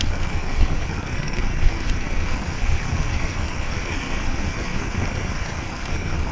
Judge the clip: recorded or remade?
remade